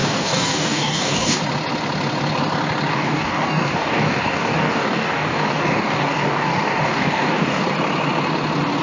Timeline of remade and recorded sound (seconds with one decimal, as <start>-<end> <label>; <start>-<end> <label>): 0.0-1.4 remade; 1.4-2.9 recorded; 2.9-7.6 remade; 7.6-8.8 recorded